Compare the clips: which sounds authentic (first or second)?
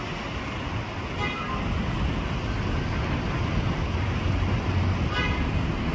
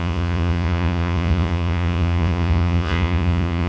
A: first